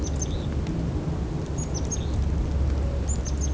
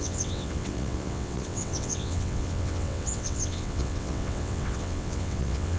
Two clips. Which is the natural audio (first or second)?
first